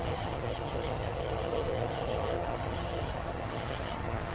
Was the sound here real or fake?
fake